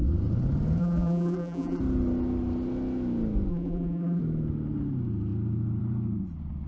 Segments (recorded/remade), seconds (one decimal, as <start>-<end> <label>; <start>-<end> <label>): 0.0-0.8 recorded; 0.8-1.8 remade; 1.8-3.5 recorded; 3.5-4.2 remade; 4.2-6.7 recorded